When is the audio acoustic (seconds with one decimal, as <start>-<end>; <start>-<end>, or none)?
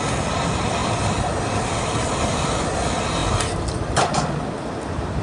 0.0-0.8; 2.6-3.2; 4.0-5.2